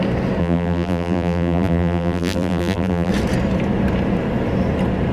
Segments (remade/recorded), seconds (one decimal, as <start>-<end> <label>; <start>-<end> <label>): 0.0-0.4 recorded; 0.4-3.1 remade; 3.1-5.1 recorded